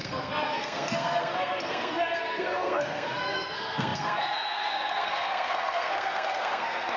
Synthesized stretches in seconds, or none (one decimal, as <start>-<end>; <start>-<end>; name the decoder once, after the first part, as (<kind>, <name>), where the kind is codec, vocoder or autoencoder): 0.0-7.0 (codec, SNAC)

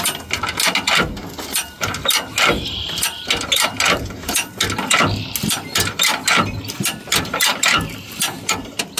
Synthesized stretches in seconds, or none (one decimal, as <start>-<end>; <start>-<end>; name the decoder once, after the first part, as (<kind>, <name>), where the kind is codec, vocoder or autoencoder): none